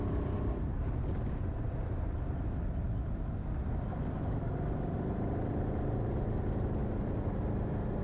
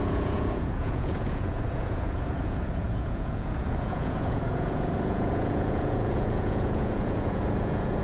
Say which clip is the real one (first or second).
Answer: first